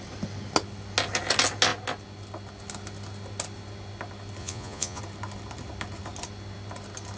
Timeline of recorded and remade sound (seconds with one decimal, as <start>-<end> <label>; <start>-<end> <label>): 0.0-4.4 recorded; 4.4-5.0 remade; 5.0-7.2 recorded